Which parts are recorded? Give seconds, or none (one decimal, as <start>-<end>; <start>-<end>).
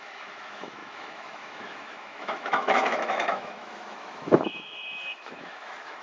none